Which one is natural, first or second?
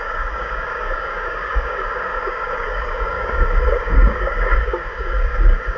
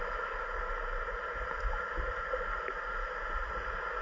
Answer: second